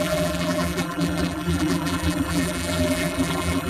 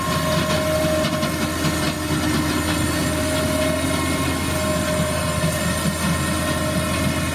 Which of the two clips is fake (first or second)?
first